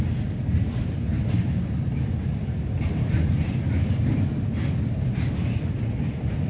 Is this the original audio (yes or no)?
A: yes